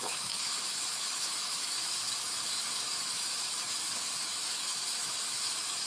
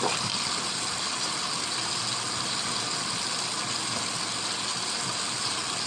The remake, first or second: first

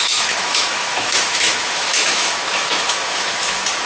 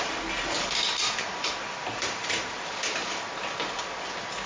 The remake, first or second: first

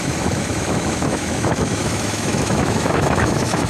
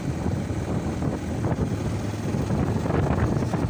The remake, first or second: first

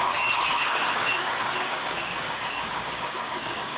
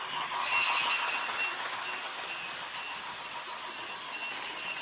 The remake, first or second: first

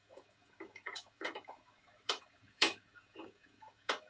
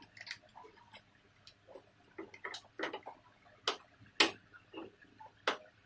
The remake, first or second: first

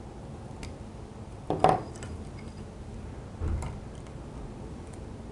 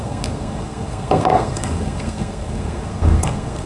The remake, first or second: second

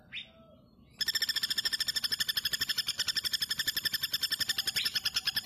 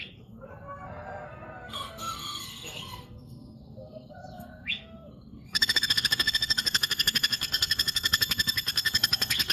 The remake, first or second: second